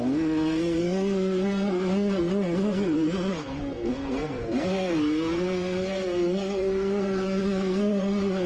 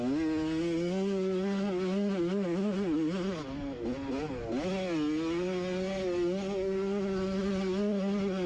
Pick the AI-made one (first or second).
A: first